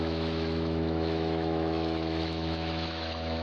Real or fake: fake